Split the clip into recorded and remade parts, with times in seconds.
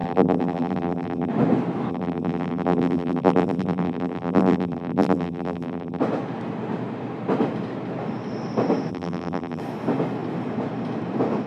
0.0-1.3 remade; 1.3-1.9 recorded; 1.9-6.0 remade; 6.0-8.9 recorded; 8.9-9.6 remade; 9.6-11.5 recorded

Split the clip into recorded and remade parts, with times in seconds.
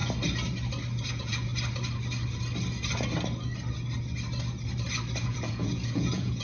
0.0-1.1 recorded; 1.1-1.5 remade; 1.5-5.2 recorded; 5.2-6.4 remade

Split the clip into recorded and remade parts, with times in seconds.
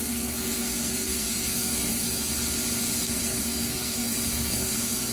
0.0-2.3 remade; 2.3-3.0 recorded; 3.0-5.1 remade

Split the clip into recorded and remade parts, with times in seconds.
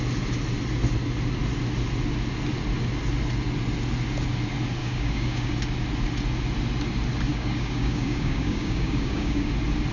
0.0-4.8 recorded; 4.8-5.5 remade; 5.5-7.3 recorded; 7.3-9.5 remade; 9.5-9.9 recorded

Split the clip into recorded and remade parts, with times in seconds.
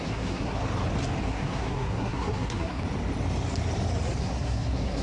0.0-0.6 remade; 0.6-1.2 recorded; 1.2-2.8 remade; 2.8-4.2 recorded; 4.2-5.0 remade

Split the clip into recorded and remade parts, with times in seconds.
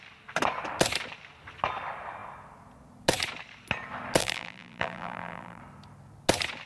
0.0-4.2 recorded; 4.2-5.6 remade; 5.6-6.7 recorded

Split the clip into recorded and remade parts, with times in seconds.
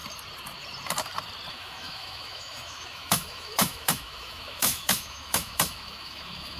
0.0-1.5 recorded; 1.5-6.6 remade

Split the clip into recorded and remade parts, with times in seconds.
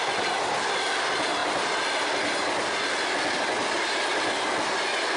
0.0-5.2 recorded